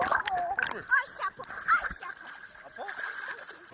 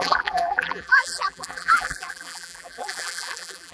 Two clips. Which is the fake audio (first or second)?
second